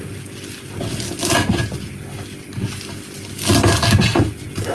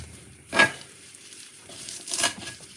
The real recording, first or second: first